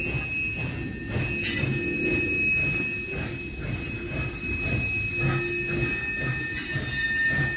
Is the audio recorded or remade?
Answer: recorded